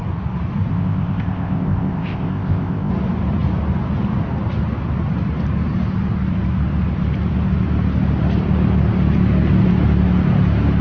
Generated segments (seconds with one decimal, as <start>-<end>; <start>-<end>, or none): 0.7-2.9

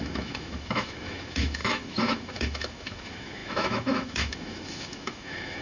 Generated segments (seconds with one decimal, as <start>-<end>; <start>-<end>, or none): 0.0-5.6

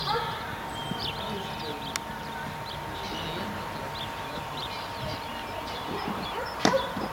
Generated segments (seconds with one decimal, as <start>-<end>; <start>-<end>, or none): 4.3-7.1

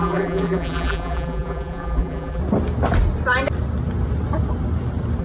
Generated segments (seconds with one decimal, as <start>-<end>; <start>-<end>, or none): 0.0-2.4

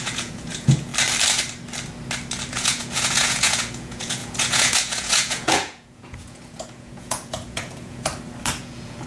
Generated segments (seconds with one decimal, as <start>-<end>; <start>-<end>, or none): 0.0-0.9; 2.5-8.1; 8.6-9.1